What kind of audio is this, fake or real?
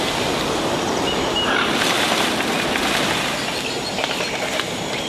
real